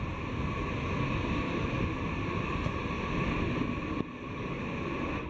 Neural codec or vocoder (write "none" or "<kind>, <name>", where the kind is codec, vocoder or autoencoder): none